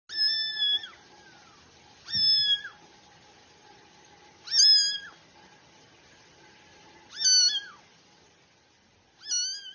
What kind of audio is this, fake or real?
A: real